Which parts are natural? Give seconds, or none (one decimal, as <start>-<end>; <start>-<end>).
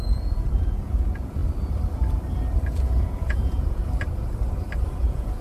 1.4-2.7; 3.8-5.0